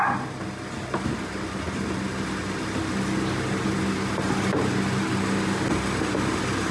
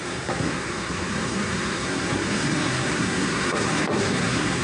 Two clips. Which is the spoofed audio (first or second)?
second